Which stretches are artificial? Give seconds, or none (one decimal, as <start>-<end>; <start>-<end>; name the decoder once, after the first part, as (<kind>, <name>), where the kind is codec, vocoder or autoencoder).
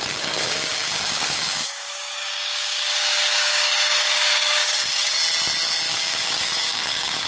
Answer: 0.0-5.2 (codec, DAC); 5.9-7.3